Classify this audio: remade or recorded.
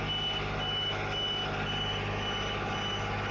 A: recorded